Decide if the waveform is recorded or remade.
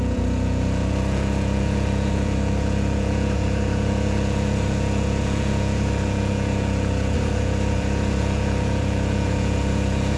remade